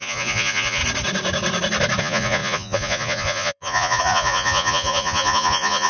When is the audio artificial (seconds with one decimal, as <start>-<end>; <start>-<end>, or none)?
0.0-0.8; 2.0-5.9